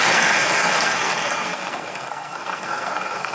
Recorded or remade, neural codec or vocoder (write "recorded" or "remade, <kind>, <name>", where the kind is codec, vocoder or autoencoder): remade, codec, SNAC